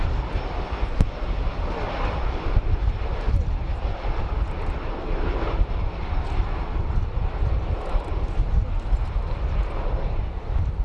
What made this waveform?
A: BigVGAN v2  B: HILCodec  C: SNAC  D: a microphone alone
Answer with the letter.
D